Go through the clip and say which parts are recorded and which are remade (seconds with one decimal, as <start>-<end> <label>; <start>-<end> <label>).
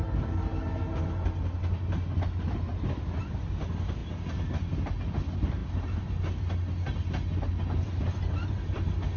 0.0-2.7 recorded; 2.7-3.2 remade; 3.2-9.2 recorded